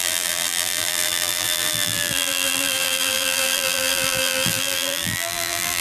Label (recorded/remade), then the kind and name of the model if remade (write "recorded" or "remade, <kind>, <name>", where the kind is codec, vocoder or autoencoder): remade, vocoder, BigVGAN v2